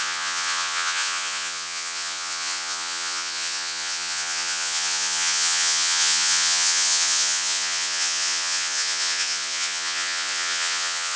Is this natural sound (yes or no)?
no